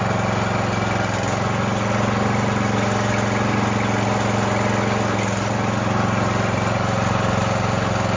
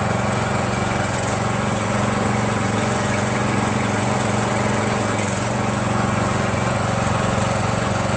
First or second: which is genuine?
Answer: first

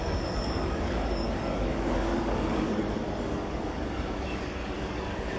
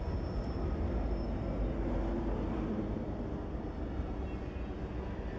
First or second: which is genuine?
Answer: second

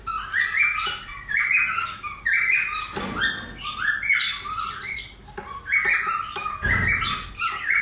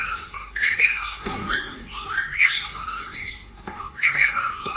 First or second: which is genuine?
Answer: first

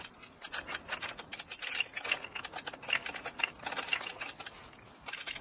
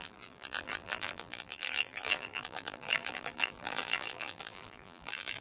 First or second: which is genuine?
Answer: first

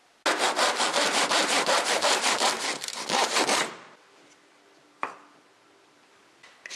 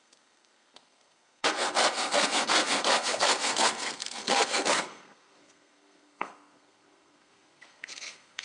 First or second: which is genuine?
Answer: first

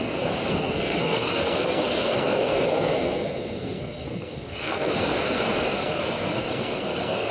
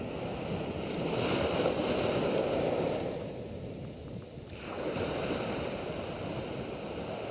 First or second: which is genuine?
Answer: second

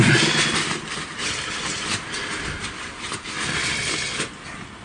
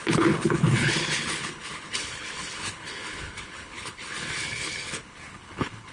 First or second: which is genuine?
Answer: first